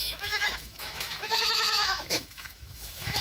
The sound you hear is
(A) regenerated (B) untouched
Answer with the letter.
A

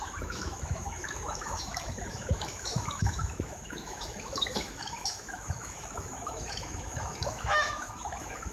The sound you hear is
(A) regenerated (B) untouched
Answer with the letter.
A